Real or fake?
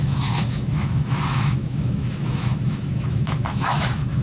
fake